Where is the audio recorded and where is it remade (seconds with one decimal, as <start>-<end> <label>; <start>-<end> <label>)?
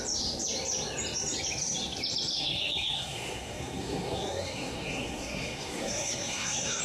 0.0-2.3 recorded; 2.3-6.8 remade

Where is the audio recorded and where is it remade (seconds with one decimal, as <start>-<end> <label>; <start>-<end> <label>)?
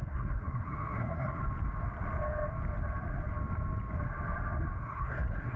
0.0-1.4 remade; 1.4-4.8 recorded; 4.8-5.6 remade